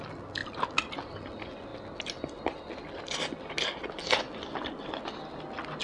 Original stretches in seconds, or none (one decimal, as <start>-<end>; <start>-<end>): 0.0-5.8